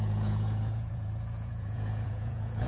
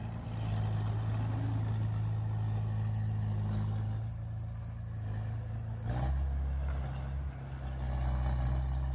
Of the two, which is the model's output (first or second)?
first